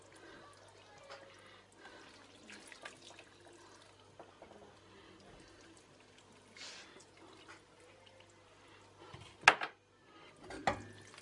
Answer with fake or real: real